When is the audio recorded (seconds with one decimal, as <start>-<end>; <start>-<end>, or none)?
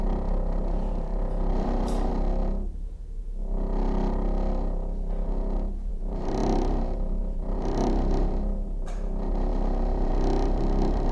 2.1-5.9